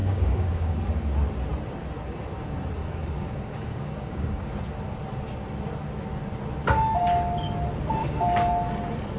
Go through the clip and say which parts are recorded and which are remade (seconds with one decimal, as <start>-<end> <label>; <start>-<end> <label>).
0.0-0.8 remade; 0.8-2.8 recorded; 2.8-4.5 remade; 4.5-8.0 recorded; 8.0-8.5 remade; 8.5-9.2 recorded